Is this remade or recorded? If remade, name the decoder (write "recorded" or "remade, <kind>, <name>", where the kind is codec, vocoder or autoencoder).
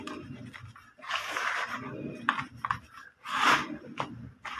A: recorded